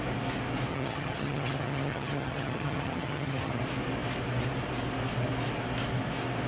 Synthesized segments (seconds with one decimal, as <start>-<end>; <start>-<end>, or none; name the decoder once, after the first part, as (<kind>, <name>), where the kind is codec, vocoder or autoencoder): 0.7-3.6 (vocoder, HiFi-GAN)